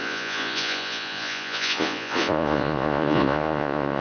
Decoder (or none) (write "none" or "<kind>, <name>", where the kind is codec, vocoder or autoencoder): vocoder, Vocos